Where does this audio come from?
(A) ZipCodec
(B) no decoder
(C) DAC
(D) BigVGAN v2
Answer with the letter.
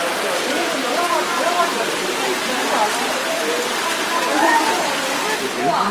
D